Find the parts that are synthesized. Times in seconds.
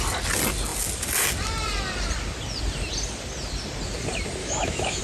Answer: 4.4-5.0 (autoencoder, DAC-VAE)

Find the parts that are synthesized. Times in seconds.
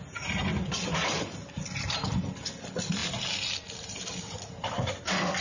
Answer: none